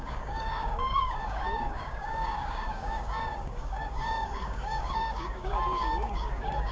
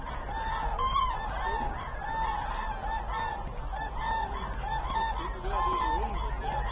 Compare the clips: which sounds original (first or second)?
second